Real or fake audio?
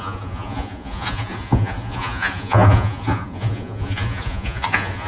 fake